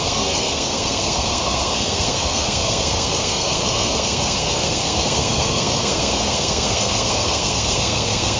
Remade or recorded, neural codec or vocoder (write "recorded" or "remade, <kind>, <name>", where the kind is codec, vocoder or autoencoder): remade, codec, SNAC